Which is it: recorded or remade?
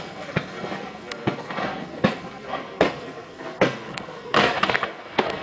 remade